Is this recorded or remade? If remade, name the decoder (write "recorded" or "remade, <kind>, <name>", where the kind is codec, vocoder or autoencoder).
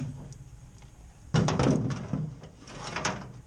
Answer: remade, vocoder, BigVGAN v2